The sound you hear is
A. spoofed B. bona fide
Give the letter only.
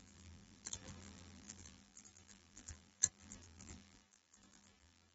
A